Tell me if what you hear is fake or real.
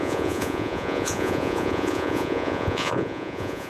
fake